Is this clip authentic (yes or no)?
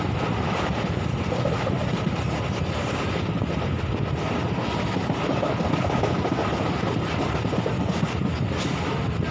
yes